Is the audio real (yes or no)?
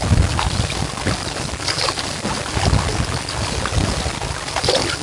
yes